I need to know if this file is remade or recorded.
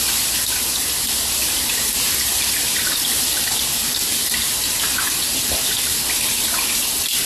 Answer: recorded